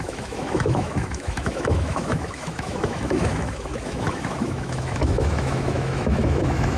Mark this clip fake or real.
fake